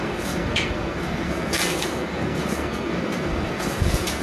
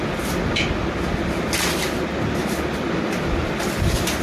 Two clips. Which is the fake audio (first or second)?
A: first